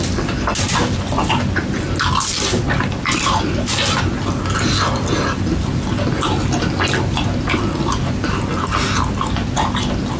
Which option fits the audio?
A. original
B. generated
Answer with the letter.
A